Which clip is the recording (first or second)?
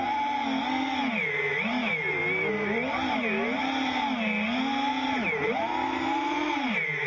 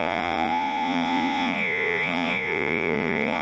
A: first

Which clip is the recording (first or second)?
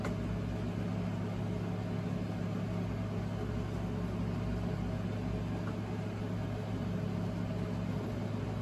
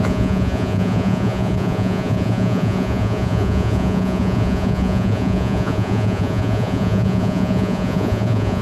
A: first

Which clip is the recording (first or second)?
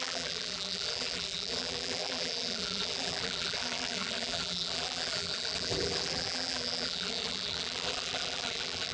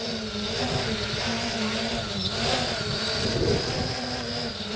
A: second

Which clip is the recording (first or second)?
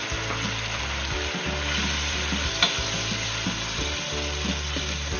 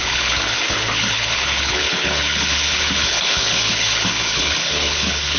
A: first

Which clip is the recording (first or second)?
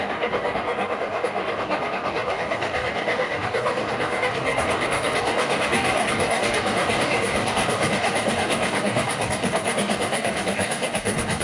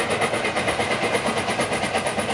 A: second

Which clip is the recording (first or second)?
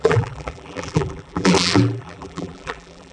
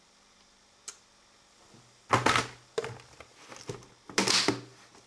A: second